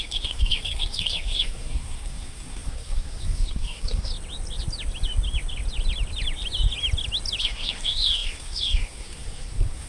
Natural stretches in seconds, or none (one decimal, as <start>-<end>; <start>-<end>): 4.1-7.4